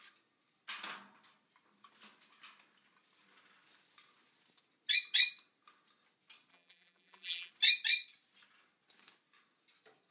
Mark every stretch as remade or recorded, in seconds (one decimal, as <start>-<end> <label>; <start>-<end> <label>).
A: 0.0-6.5 recorded; 6.5-7.5 remade; 7.5-10.1 recorded